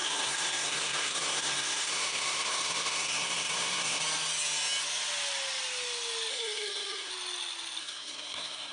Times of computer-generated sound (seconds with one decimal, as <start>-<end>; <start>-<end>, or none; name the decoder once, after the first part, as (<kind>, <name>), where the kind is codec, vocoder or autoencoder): 0.0-4.0 (codec, SNAC); 6.3-7.1; 7.8-8.7